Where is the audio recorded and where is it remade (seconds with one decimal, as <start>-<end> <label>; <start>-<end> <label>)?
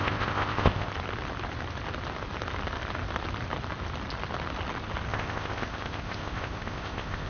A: 0.0-0.9 remade; 0.9-5.1 recorded; 5.1-7.3 remade